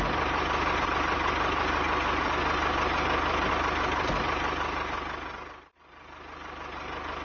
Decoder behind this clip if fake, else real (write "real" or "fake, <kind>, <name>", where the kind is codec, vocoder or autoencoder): real